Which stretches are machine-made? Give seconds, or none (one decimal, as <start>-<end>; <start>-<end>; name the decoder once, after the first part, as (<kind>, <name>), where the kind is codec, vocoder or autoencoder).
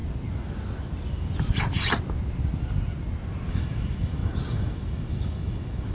3.5-5.9 (autoencoder, DAC-VAE)